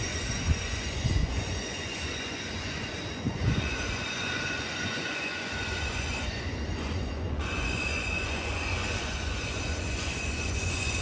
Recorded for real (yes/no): no